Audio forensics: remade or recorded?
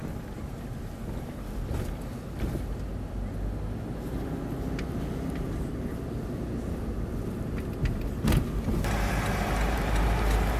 recorded